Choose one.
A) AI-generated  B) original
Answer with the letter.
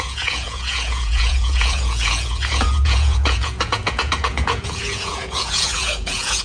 A